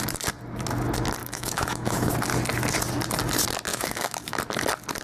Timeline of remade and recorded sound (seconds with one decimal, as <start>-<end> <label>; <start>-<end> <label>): 0.0-1.2 recorded; 1.2-2.1 remade; 2.1-3.7 recorded; 3.7-4.4 remade; 4.4-5.0 recorded